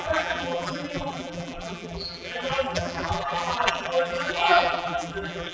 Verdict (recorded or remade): remade